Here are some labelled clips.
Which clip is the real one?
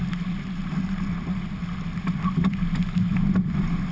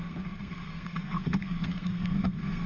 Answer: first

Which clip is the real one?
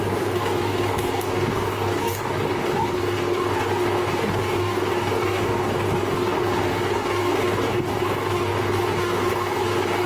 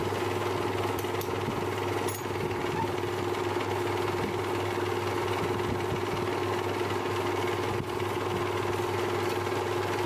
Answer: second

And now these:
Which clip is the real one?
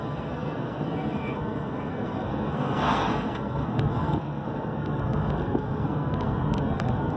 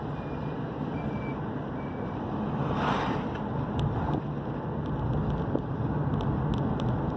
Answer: second